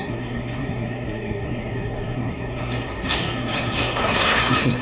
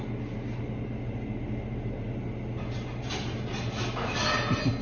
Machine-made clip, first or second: first